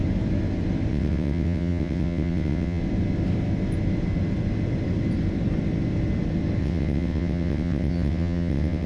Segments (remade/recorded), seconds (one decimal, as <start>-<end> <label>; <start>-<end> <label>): 0.0-0.9 recorded; 0.9-2.8 remade; 2.8-6.6 recorded; 6.6-8.9 remade